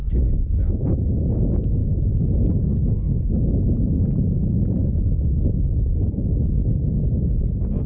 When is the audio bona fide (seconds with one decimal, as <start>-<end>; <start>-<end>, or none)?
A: 0.0-7.9